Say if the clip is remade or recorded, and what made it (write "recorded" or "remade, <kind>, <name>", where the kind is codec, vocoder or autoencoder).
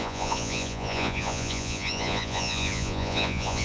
remade, vocoder, Vocos